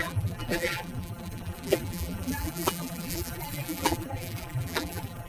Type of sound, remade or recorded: remade